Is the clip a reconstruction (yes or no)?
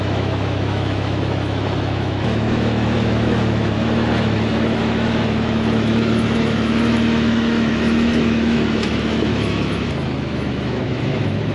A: yes